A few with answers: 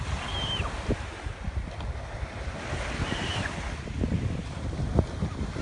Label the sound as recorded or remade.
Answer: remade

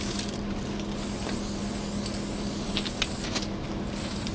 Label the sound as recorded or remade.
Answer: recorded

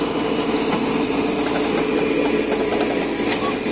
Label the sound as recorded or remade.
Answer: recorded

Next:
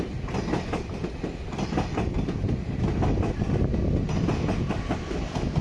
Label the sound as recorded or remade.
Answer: recorded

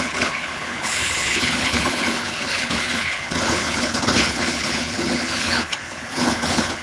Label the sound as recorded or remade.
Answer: remade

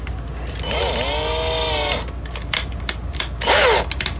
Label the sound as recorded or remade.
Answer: recorded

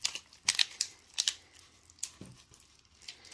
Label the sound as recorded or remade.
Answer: recorded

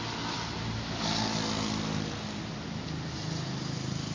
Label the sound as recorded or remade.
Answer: recorded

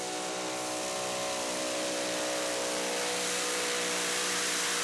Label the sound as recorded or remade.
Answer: recorded